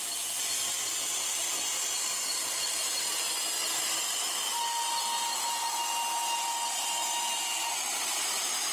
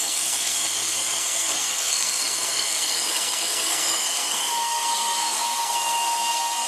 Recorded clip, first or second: first